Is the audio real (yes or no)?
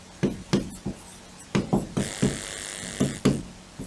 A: yes